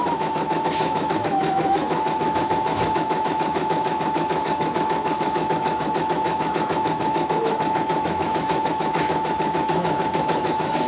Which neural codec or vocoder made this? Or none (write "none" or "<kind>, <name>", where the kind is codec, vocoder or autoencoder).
autoencoder, DAC-VAE